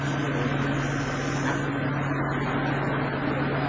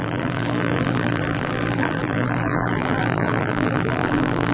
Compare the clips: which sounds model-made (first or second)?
second